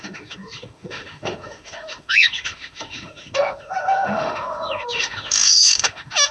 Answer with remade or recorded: remade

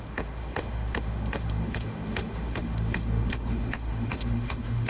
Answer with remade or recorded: remade